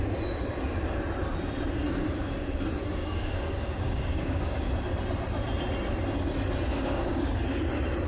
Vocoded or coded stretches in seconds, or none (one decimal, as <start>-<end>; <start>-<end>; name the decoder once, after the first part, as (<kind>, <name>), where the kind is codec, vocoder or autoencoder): 3.0-4.7 (codec, DAC); 6.7-7.3